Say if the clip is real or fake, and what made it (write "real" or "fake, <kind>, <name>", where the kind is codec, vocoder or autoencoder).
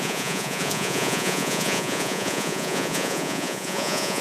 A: fake, vocoder, Vocos